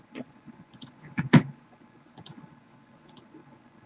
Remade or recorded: remade